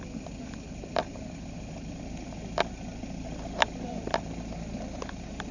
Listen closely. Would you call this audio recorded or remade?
recorded